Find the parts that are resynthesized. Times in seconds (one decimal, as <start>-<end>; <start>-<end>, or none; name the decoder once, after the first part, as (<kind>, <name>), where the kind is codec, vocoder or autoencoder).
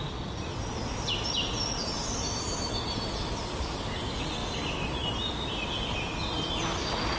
none